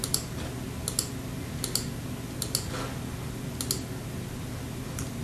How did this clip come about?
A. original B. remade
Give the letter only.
A